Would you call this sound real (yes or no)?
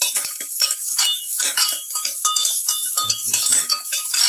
no